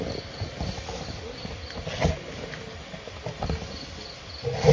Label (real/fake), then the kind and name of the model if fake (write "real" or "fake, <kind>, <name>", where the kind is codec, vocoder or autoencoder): real